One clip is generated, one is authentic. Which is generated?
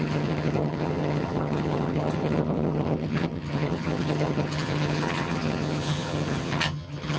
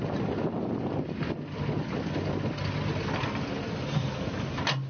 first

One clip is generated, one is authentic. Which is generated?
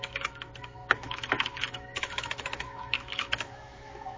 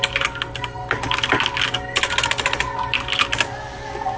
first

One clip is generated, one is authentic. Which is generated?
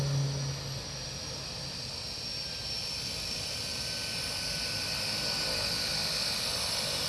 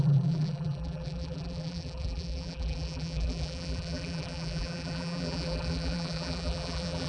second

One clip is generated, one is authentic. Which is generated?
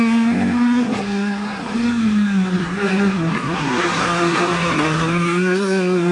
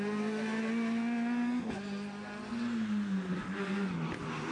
first